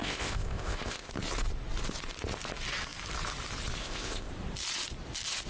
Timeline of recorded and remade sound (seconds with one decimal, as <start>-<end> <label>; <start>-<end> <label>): 0.0-1.1 remade; 1.1-3.8 recorded; 3.8-4.3 remade; 4.3-5.5 recorded

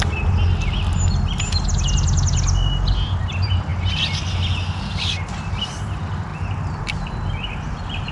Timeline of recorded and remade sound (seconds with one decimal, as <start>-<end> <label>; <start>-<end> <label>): 0.0-8.1 recorded

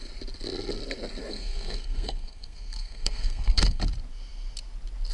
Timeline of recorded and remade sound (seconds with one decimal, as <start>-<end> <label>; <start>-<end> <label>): 0.0-1.3 recorded; 1.3-3.8 remade; 3.8-5.1 recorded

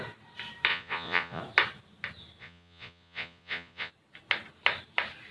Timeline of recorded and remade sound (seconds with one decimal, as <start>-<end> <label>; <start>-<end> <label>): 0.0-0.7 recorded; 0.7-1.4 remade; 1.4-2.4 recorded; 2.4-3.9 remade; 3.9-5.3 recorded

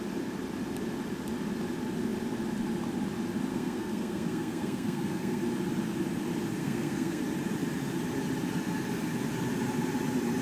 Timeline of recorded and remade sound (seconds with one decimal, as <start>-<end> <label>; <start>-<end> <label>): 0.0-3.5 recorded; 3.5-5.4 remade; 5.4-6.6 recorded; 6.6-7.2 remade; 7.2-10.4 recorded

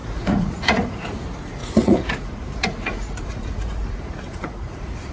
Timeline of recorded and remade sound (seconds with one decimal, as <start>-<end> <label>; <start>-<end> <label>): 0.0-1.2 remade; 1.2-1.6 recorded; 1.6-5.1 remade

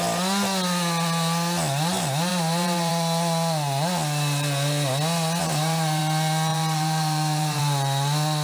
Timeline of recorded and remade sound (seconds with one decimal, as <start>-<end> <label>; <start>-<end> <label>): 0.0-2.3 recorded; 2.3-2.9 remade; 2.9-5.4 recorded; 5.4-6.0 remade; 6.0-6.5 recorded; 6.5-7.6 remade; 7.6-8.4 recorded

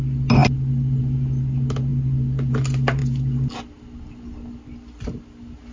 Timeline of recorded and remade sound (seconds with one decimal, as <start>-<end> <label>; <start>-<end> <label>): 0.0-5.7 recorded